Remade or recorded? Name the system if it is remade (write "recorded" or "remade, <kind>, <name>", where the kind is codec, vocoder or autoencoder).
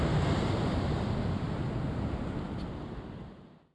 recorded